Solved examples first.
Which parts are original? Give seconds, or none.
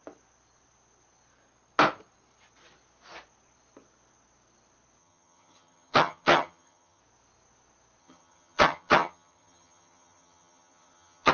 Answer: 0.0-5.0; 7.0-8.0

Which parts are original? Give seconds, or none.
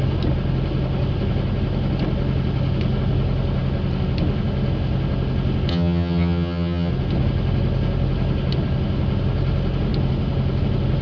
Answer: 0.0-5.7; 6.9-11.0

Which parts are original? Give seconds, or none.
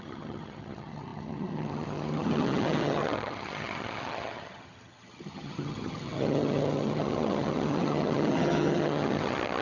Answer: none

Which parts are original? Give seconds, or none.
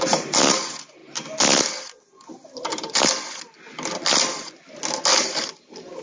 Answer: 0.0-6.0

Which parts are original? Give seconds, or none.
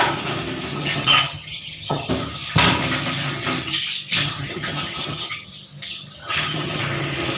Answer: 0.0-0.7; 2.1-4.2; 5.5-6.2; 6.8-7.4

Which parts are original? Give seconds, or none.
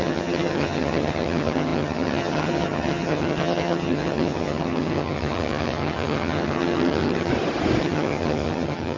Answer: 7.3-7.8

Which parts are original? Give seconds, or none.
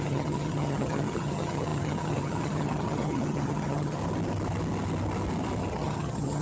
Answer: 4.0-5.7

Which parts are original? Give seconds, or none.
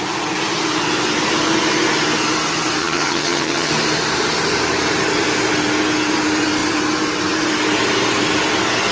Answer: 0.0-2.8; 3.7-8.9